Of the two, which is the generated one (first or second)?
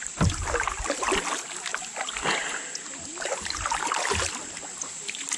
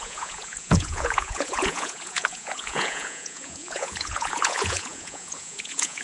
second